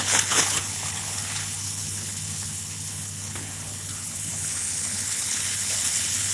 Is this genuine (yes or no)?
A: no